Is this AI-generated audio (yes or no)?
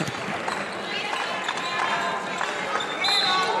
no